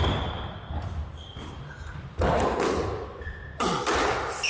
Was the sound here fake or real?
real